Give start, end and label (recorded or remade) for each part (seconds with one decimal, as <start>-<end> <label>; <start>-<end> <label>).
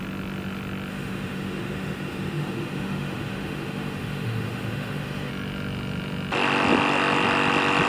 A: 0.0-0.9 recorded; 0.9-5.3 remade; 5.3-7.9 recorded